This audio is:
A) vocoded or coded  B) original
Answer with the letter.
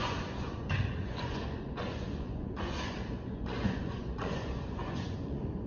A